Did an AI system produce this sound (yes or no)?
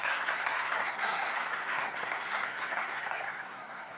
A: yes